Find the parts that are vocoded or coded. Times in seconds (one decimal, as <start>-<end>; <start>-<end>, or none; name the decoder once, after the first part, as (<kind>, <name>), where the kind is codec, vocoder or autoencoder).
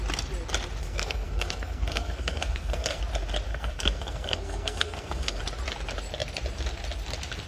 0.8-3.0 (codec, SNAC); 3.5-5.4